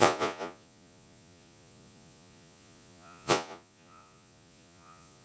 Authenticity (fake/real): fake